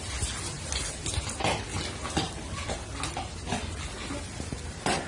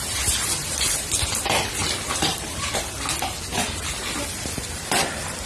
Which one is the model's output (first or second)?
second